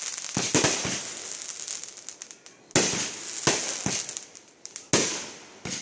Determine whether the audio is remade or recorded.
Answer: recorded